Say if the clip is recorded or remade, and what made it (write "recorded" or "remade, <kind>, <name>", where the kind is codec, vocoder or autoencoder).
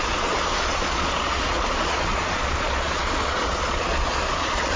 remade, vocoder, Vocos